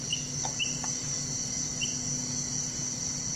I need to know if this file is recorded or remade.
recorded